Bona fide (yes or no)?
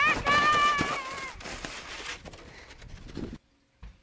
yes